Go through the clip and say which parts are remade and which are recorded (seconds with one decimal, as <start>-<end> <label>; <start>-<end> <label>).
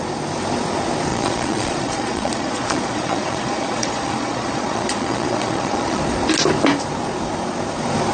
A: 0.0-1.1 recorded; 1.1-6.0 remade; 6.0-8.1 recorded